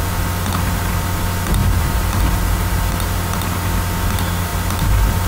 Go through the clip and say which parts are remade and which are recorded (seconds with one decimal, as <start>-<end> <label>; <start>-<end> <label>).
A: 0.0-1.6 recorded; 1.6-2.2 remade; 2.2-5.3 recorded